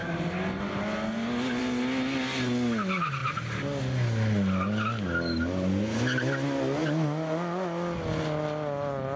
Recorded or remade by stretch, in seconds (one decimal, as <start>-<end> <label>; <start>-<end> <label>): 0.0-9.2 recorded